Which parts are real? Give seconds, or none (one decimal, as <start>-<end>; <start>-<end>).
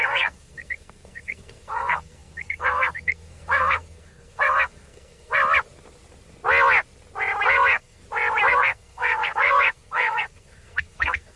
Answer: 5.4-7.5; 8.0-8.5